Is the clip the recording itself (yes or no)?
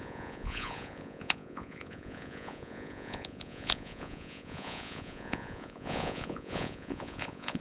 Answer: no